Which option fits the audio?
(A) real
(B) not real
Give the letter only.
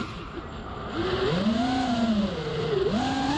A